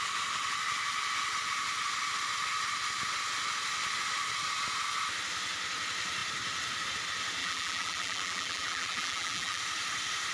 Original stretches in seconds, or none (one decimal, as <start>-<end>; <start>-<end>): 0.0-7.4; 9.6-10.3